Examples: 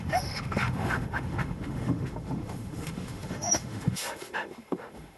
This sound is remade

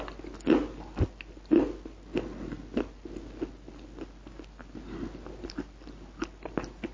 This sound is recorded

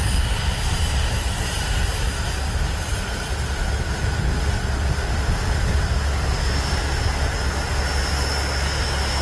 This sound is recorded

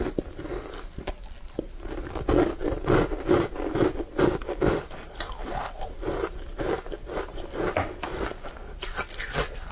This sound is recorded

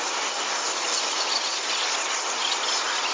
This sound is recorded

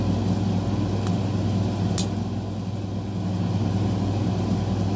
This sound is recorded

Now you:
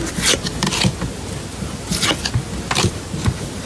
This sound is recorded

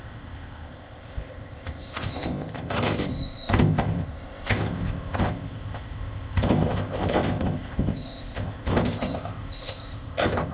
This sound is remade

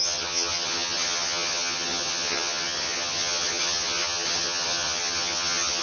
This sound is remade